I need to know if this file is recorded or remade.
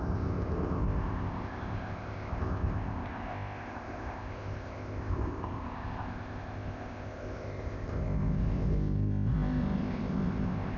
remade